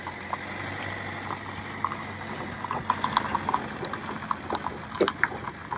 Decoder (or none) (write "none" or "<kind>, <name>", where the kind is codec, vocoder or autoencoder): none